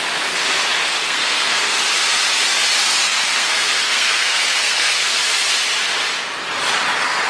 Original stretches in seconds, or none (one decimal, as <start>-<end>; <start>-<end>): 0.0-0.8; 1.8-2.9; 5.2-7.3

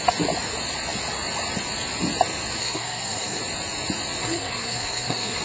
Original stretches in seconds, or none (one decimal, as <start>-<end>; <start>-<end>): 0.0-2.6; 3.4-4.2